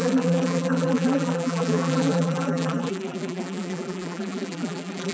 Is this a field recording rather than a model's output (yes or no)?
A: no